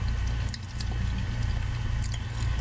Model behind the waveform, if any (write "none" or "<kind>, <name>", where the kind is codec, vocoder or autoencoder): none